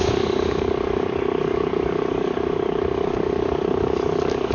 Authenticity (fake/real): fake